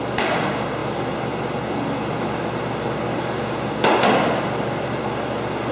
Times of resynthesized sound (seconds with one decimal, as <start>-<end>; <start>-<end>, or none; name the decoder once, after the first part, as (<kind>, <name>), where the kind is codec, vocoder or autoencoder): none